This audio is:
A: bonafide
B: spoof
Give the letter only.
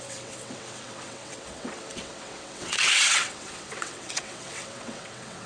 B